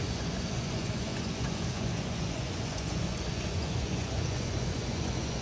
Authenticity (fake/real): fake